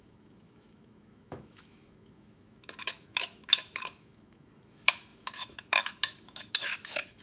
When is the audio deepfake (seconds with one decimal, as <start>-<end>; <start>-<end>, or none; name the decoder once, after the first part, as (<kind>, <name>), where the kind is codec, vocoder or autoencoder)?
0.0-7.2 (autoencoder, DAC-VAE)